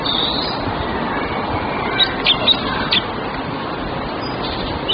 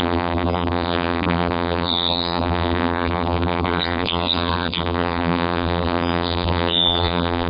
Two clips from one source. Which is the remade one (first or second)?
second